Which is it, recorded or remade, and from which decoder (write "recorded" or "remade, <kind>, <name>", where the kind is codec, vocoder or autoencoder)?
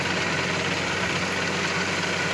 recorded